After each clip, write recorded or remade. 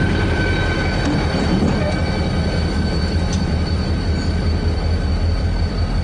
remade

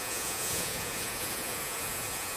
remade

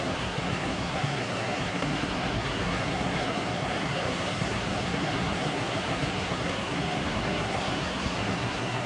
remade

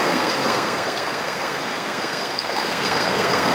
remade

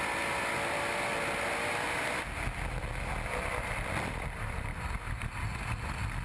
recorded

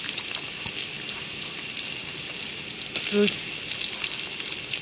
recorded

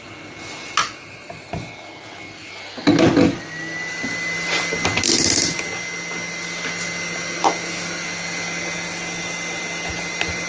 recorded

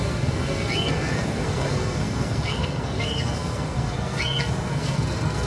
remade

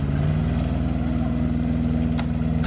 recorded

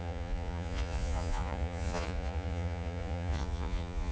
remade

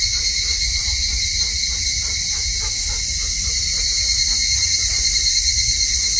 recorded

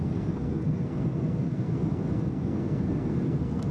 remade